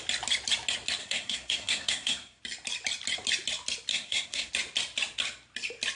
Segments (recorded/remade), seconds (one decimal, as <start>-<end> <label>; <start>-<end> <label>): 0.0-1.0 recorded; 1.0-2.4 remade; 2.4-3.9 recorded; 3.9-4.5 remade; 4.5-6.0 recorded

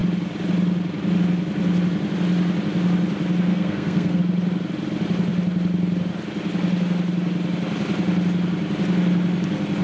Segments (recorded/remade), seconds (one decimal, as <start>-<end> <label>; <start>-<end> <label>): 0.0-3.5 recorded; 3.5-4.2 remade; 4.2-9.8 recorded